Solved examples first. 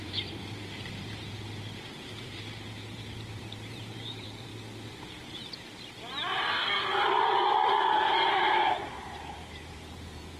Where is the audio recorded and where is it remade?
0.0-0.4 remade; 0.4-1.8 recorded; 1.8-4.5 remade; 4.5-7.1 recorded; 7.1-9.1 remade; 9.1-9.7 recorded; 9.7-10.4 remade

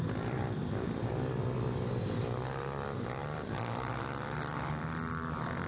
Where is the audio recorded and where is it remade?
0.0-1.0 remade; 1.0-1.9 recorded; 1.9-5.7 remade

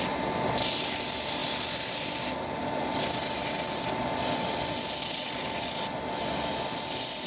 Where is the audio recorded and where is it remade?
0.0-7.3 recorded

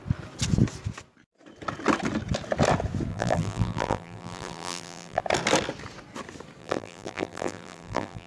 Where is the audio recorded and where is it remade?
0.0-3.1 recorded; 3.1-5.2 remade; 5.2-6.6 recorded; 6.6-8.3 remade